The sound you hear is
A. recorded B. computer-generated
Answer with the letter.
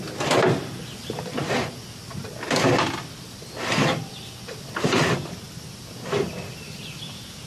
A